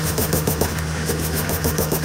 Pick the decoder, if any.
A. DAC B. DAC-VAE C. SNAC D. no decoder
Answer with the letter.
B